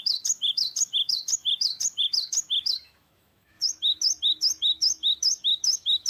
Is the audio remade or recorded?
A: remade